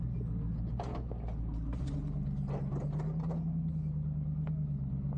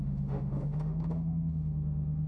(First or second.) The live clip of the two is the first